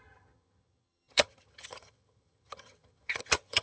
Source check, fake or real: fake